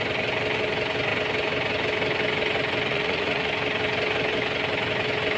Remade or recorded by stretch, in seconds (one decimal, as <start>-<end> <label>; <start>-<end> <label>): 0.0-2.9 recorded; 2.9-3.5 remade; 3.5-5.4 recorded